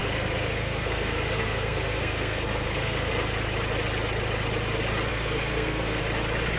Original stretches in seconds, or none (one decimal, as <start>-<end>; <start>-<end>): 3.1-5.1; 6.0-6.6